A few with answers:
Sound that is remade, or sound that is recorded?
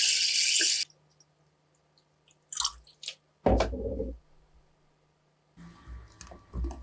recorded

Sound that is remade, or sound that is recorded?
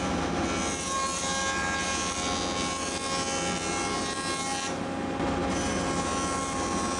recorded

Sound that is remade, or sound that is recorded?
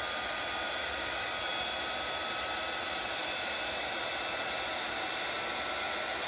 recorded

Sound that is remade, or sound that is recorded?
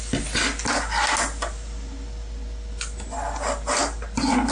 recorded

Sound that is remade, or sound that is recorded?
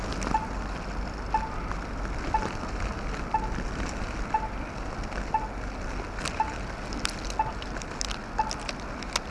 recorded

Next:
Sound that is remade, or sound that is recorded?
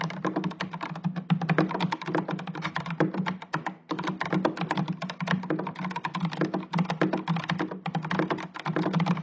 recorded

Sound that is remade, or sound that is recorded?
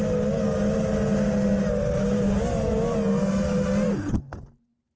recorded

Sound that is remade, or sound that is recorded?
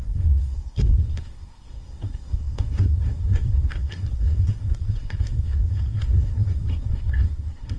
remade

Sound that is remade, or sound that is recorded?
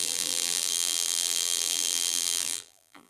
remade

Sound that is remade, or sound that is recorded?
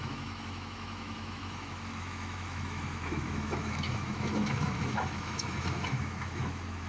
remade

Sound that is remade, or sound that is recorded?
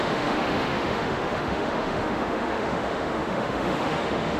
remade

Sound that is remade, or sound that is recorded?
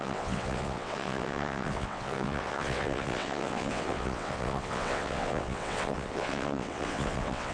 remade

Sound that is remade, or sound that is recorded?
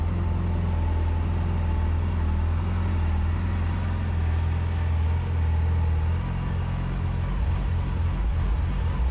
recorded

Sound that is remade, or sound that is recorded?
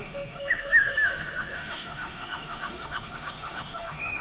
remade